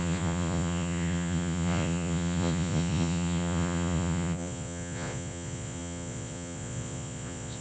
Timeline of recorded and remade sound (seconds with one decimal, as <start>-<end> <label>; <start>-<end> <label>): 0.0-7.6 remade